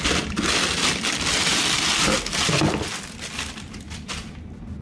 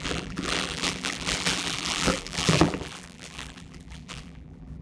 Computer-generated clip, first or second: second